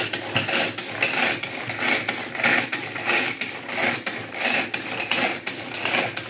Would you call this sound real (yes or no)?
yes